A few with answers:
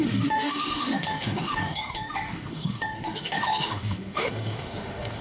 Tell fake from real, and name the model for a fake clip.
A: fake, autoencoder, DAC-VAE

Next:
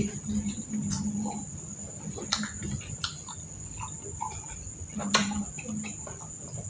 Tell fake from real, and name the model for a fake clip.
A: real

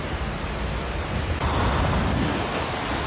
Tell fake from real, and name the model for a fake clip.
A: real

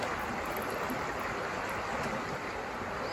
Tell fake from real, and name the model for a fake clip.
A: real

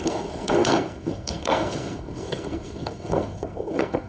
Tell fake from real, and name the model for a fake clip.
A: fake, codec, SNAC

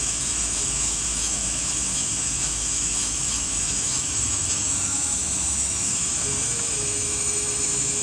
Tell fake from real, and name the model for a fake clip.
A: fake, autoencoder, DAC-VAE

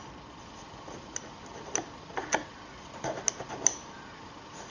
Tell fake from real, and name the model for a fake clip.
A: real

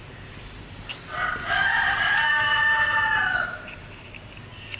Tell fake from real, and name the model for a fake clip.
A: real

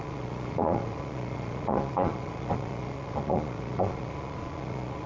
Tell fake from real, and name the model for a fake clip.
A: fake, vocoder, Vocos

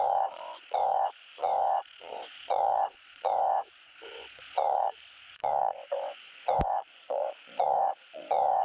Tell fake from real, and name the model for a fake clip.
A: fake, vocoder, Vocos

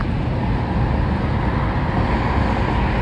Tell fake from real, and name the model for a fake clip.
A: real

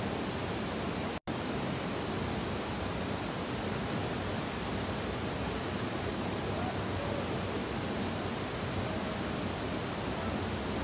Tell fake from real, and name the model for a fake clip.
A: real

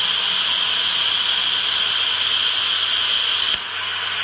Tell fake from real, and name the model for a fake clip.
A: real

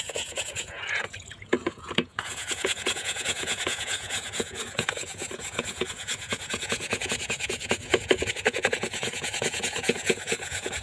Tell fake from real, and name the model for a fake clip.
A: fake, vocoder, Vocos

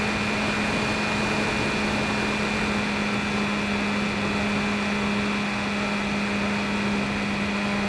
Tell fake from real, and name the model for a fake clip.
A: real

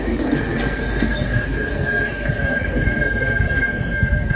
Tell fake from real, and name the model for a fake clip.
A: fake, codec, SNAC